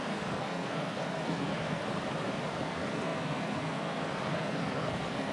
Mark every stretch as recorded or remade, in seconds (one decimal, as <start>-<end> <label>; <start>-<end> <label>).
0.0-1.8 remade; 1.8-2.5 recorded; 2.5-5.3 remade